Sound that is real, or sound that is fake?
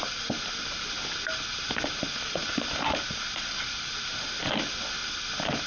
real